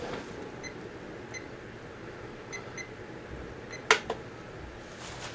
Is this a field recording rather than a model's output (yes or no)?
yes